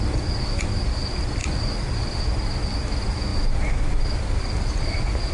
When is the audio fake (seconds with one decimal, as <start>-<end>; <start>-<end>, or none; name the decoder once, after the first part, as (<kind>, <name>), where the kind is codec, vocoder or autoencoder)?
1.4-2.2 (vocoder, BigVGAN v2)